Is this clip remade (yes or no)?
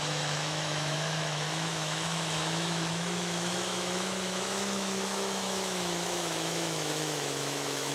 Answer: yes